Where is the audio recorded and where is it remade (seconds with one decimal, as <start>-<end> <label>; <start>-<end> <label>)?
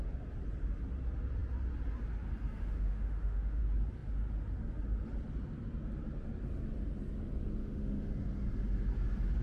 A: 0.0-2.6 recorded; 2.6-3.6 remade; 3.6-7.6 recorded; 7.6-8.1 remade; 8.1-9.4 recorded